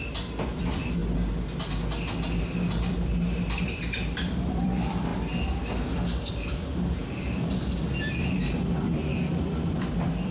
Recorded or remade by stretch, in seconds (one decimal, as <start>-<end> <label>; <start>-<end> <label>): 0.0-1.0 remade; 1.0-2.4 recorded; 2.4-5.1 remade; 5.1-6.3 recorded; 6.3-10.3 remade

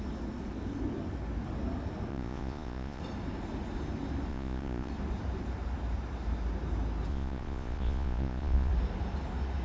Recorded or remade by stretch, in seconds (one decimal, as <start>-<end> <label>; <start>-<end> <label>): 0.0-2.1 recorded; 2.1-3.0 remade; 3.0-4.3 recorded; 4.3-4.9 remade; 4.9-7.1 recorded; 7.1-8.7 remade; 8.7-9.6 recorded

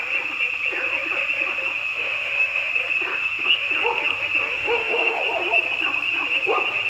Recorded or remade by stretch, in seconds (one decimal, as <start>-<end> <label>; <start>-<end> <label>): 0.0-1.9 recorded; 1.9-2.7 remade; 2.7-3.1 recorded; 3.1-3.7 remade; 3.7-4.5 recorded; 4.5-5.2 remade; 5.2-6.9 recorded

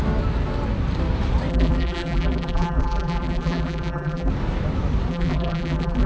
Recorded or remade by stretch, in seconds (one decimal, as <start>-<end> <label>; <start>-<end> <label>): 0.0-1.5 recorded; 1.5-4.3 remade; 4.3-5.1 recorded; 5.1-6.1 remade

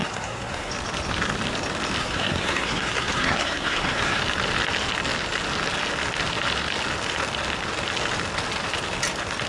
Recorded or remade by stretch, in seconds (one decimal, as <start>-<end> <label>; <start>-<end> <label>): 0.0-0.7 remade; 0.7-2.0 recorded; 2.0-4.2 remade; 4.2-9.5 recorded

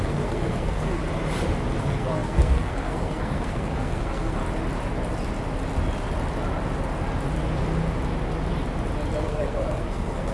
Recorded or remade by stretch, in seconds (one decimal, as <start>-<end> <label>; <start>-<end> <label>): 0.0-1.0 remade; 1.0-1.8 recorded; 1.8-4.4 remade; 4.4-9.2 recorded; 9.2-10.3 remade